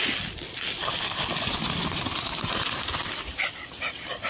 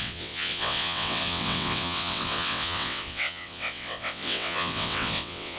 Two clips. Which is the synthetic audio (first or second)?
second